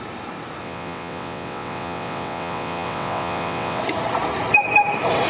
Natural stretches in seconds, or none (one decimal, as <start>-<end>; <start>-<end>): 0.0-0.6; 3.8-5.3